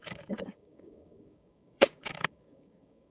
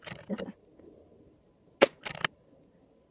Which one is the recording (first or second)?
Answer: second